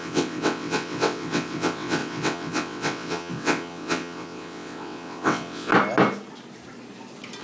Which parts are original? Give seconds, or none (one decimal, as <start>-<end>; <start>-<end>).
5.7-7.4